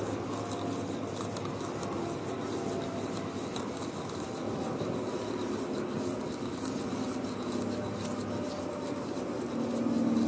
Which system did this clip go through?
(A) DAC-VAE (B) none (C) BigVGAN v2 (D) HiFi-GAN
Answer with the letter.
B